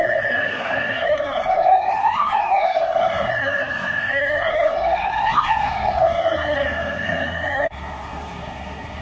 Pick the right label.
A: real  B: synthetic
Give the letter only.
B